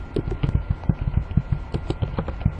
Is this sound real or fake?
real